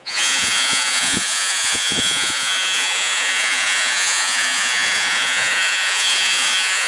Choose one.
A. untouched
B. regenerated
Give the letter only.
B